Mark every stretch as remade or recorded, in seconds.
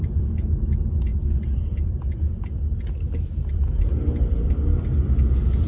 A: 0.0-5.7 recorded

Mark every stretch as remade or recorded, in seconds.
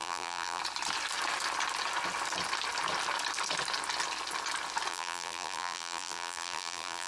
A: 0.0-0.6 remade; 0.6-4.9 recorded; 4.9-7.1 remade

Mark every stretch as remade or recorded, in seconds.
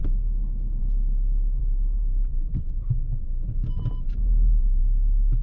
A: 0.0-1.6 recorded; 1.6-4.8 remade; 4.8-5.4 recorded